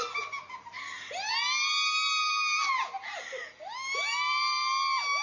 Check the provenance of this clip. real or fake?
real